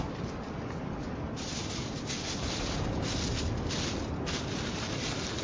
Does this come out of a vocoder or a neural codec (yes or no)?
no